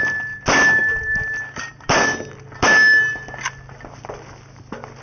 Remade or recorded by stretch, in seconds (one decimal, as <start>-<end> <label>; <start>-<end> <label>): 0.0-5.0 recorded